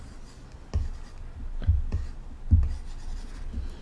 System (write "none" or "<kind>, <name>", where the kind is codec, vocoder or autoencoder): none